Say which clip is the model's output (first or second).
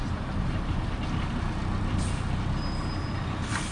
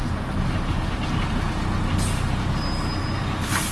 first